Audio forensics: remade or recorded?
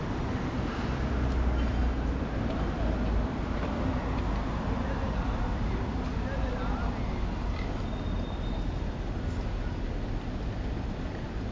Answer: recorded